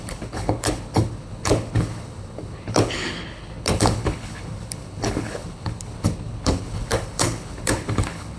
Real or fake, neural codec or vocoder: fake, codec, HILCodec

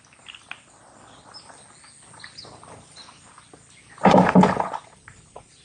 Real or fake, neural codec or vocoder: real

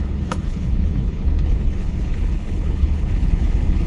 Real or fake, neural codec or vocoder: fake, codec, HILCodec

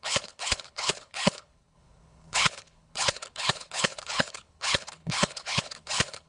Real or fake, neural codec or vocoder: fake, codec, HILCodec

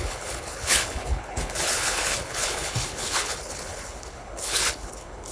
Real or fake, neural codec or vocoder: fake, codec, HILCodec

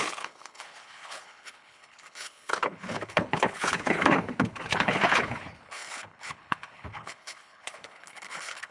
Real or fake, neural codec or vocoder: fake, codec, HILCodec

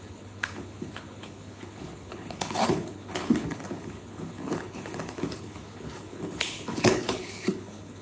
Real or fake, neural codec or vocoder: fake, codec, HILCodec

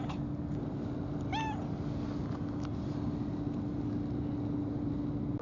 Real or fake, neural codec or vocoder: real